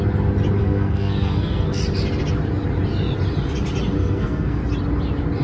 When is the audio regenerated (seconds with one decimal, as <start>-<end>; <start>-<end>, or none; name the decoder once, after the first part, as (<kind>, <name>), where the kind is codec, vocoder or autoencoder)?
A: 0.6-1.8 (codec, SNAC); 4.0-4.6